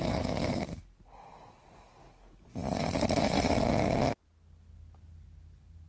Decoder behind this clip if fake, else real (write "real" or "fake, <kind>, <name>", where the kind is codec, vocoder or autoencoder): real